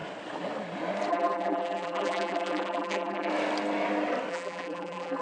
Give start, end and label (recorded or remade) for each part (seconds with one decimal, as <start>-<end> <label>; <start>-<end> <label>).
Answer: 0.0-1.1 recorded; 1.1-3.3 remade; 3.3-4.3 recorded; 4.3-5.2 remade